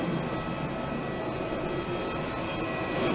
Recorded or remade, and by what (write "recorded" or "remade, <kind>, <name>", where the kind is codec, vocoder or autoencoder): recorded